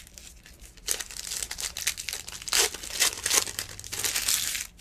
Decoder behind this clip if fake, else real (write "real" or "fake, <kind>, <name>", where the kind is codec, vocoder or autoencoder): real